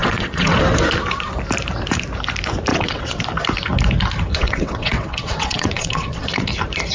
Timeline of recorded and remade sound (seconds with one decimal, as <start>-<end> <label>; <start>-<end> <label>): 0.0-0.6 remade; 0.6-2.7 recorded; 2.7-3.2 remade; 3.2-4.3 recorded; 4.3-6.5 remade; 6.5-6.9 recorded